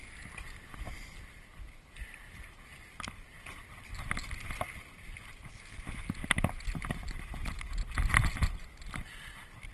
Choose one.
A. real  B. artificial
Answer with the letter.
A